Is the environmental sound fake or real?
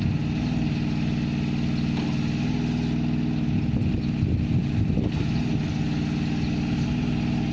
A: real